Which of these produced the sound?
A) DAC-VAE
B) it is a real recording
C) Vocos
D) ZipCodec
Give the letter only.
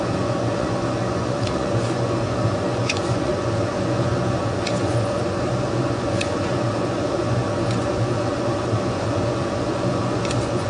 C